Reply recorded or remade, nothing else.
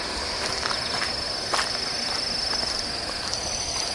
recorded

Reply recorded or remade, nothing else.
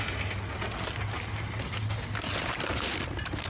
recorded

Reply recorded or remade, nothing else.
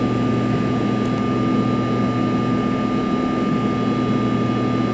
recorded